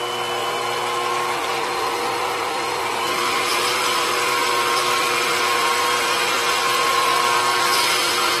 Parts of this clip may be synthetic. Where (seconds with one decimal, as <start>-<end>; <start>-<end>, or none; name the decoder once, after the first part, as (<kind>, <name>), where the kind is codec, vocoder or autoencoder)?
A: none